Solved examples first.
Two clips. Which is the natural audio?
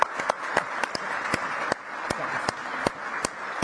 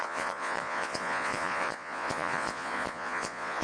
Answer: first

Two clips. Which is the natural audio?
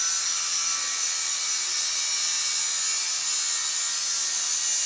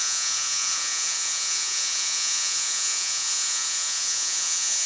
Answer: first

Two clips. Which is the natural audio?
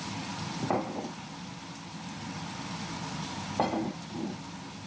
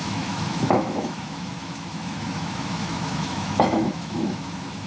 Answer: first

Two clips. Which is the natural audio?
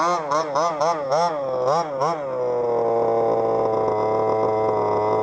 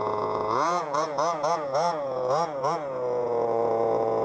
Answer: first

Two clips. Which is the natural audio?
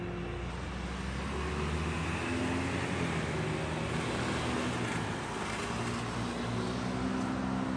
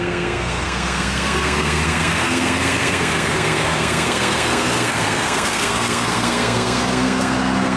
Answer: first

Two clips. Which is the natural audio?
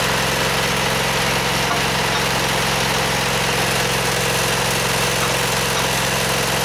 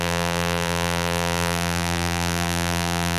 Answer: first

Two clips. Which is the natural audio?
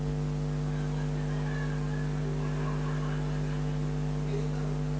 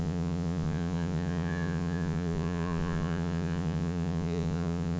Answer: first